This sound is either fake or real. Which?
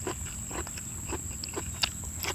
real